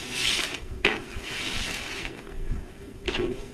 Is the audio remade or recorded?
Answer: remade